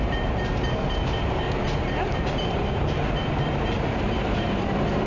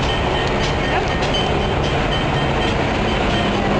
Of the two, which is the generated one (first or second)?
first